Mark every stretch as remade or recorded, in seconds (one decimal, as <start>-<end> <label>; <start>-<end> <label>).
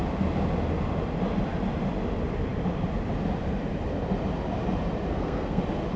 0.0-5.1 recorded; 5.1-5.6 remade; 5.6-6.0 recorded